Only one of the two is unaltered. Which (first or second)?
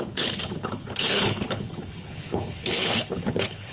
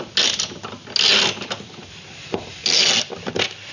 second